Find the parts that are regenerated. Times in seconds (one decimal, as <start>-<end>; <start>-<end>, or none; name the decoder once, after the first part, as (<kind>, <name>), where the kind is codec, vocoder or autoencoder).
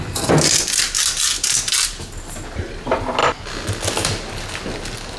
none